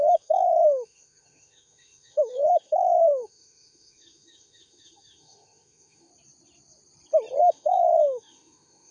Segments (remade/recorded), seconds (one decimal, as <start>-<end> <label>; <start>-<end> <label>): 0.0-6.1 remade; 6.1-7.4 recorded; 7.4-8.9 remade